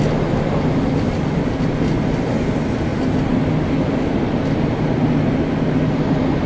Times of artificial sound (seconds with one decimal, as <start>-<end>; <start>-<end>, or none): none